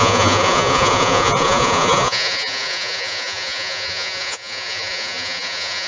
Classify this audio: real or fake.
fake